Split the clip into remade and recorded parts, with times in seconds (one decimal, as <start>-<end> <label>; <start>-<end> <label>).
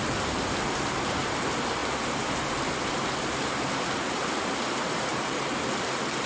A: 0.0-5.1 recorded; 5.1-5.6 remade; 5.6-6.3 recorded